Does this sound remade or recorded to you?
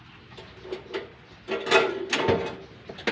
recorded